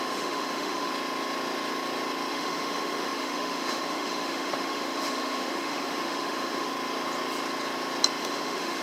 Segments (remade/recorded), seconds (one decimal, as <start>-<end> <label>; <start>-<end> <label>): 0.0-0.9 remade; 0.9-2.3 recorded; 2.3-6.7 remade; 6.7-8.2 recorded; 8.2-8.8 remade